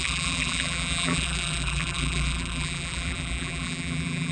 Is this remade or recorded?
remade